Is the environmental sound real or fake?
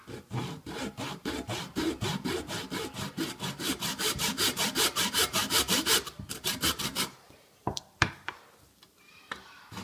fake